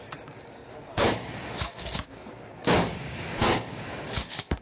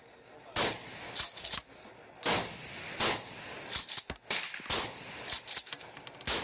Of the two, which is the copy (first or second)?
first